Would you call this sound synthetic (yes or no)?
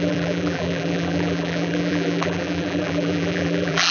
yes